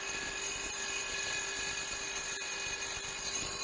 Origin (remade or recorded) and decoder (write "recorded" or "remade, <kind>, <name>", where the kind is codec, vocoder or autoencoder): recorded